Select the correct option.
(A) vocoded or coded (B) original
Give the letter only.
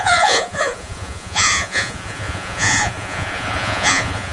A